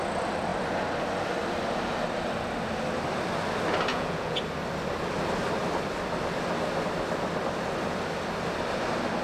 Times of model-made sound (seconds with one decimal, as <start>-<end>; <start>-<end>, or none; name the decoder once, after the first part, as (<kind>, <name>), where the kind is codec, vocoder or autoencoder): 3.9-4.4 (vocoder, Vocos)